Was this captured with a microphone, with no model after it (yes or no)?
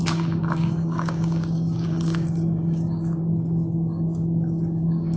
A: no